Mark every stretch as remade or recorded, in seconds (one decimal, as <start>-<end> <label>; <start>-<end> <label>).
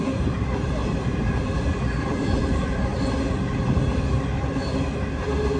0.0-2.9 remade; 2.9-5.6 recorded